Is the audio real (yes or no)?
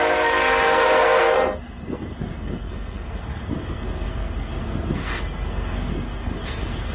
no